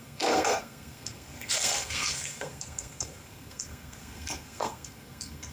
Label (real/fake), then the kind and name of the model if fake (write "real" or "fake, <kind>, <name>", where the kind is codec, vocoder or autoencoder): fake, codec, SNAC